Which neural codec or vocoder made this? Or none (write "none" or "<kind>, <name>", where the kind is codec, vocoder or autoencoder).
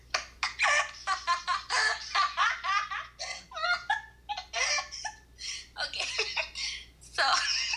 none